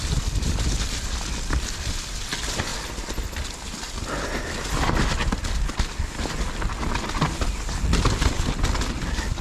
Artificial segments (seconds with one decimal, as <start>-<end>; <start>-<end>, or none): none